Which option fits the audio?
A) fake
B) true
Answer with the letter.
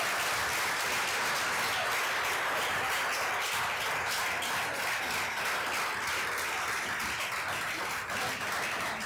B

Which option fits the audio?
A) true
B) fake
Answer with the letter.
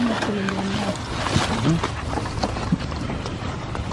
A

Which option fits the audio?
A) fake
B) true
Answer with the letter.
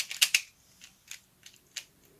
B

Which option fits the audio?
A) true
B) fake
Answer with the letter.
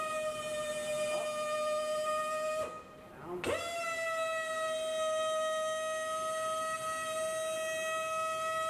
A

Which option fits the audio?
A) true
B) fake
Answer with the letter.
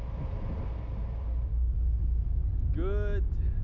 A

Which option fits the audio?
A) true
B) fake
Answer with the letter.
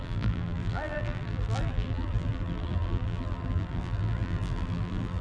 B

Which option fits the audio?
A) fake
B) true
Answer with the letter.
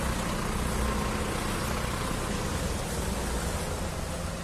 B